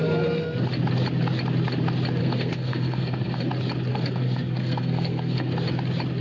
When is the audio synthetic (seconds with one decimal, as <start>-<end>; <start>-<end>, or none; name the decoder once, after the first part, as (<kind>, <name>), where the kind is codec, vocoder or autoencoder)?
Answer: 2.2-3.5 (codec, SNAC); 3.9-5.5